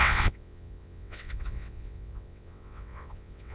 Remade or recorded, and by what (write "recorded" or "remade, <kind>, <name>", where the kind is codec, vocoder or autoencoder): remade, vocoder, WaveNeXt